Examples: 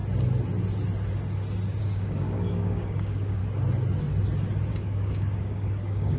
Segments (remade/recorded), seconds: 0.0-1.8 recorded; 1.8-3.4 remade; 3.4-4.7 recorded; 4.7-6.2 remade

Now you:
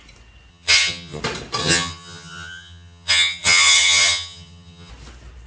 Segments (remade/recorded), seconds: 0.0-0.5 recorded; 0.5-1.2 remade; 1.2-1.6 recorded; 1.6-4.9 remade; 4.9-5.5 recorded